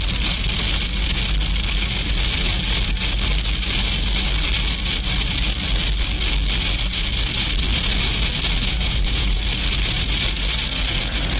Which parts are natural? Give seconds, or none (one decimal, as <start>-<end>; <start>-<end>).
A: 0.0-8.6; 9.4-11.4